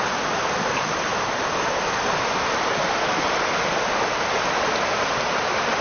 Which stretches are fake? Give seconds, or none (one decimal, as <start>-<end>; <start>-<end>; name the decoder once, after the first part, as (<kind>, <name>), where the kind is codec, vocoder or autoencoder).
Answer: none